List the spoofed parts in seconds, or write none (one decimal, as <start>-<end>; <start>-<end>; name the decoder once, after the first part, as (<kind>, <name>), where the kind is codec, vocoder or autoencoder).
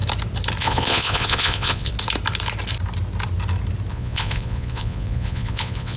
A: 0.6-1.9 (vocoder, Vocos); 3.9-6.0